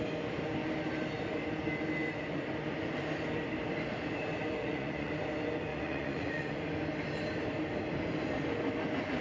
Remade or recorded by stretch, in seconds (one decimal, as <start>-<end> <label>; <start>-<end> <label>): 0.0-4.6 recorded; 4.6-5.1 remade; 5.1-5.7 recorded; 5.7-6.6 remade; 6.6-9.2 recorded